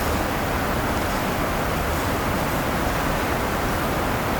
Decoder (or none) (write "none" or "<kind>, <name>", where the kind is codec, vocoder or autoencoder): none